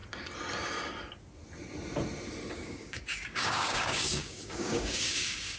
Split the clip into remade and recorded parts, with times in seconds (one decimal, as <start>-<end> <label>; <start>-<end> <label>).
0.0-2.5 recorded; 2.5-5.6 remade